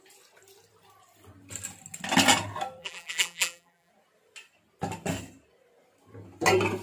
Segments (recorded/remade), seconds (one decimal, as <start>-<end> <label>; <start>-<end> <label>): 0.0-2.8 recorded; 2.8-3.9 remade; 3.9-6.8 recorded